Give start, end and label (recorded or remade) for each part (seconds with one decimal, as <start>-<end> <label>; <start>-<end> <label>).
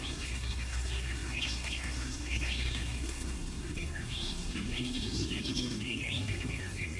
0.0-7.0 remade